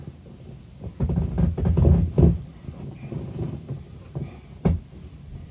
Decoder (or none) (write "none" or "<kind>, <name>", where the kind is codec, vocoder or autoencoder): none